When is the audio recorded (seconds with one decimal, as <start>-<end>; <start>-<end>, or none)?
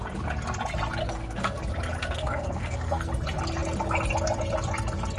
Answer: 0.0-1.0; 1.6-2.0; 3.1-5.2